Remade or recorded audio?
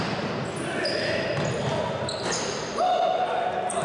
recorded